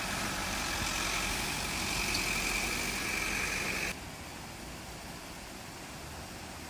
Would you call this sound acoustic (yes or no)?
yes